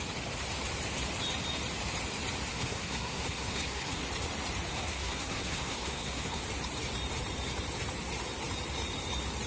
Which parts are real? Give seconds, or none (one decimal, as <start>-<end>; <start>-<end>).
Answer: 0.0-2.5; 4.0-4.7; 6.4-9.5